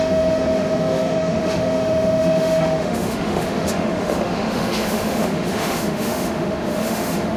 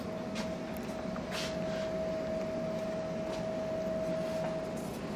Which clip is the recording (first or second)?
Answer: second